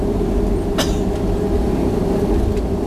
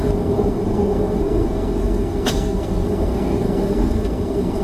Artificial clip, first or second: second